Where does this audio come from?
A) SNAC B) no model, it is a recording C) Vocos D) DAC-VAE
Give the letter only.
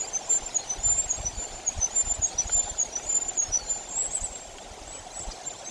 B